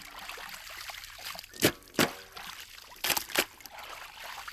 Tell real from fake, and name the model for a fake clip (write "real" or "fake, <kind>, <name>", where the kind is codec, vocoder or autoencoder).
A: real